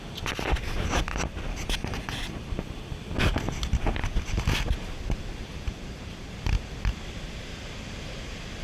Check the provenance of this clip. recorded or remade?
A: recorded